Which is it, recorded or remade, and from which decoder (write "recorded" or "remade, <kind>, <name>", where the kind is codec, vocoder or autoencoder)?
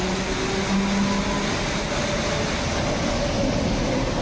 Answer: recorded